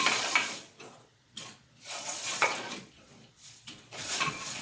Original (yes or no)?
no